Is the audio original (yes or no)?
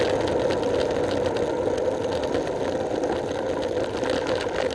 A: yes